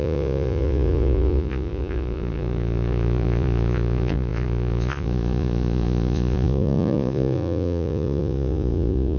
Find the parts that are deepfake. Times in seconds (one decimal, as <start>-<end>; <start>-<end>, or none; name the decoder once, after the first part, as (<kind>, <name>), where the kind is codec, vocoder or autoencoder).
0.0-9.2 (vocoder, Vocos)